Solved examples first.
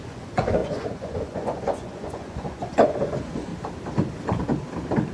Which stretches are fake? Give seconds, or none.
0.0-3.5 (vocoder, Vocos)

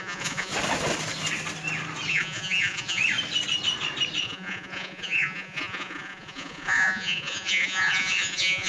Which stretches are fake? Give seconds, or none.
0.0-0.5 (vocoder, Vocos); 2.1-3.0; 4.2-8.7

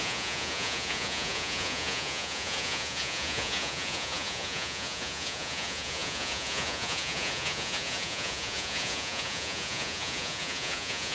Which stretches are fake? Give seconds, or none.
0.0-11.1 (vocoder, Vocos)

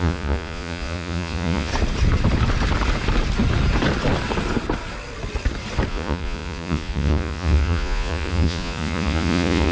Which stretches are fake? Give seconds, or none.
0.0-1.7 (vocoder, Vocos); 5.9-9.7

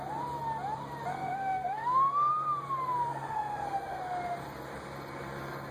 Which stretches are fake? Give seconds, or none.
1.1-2.3 (codec, SNAC); 3.1-4.0

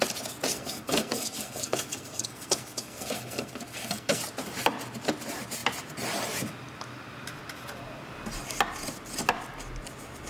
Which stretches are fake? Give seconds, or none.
0.5-4.2 (codec, SNAC)